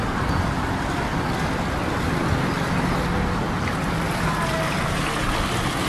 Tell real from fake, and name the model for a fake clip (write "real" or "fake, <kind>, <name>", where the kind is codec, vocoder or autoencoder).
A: real